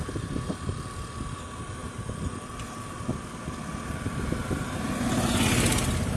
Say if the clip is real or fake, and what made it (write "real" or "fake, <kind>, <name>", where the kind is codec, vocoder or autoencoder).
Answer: real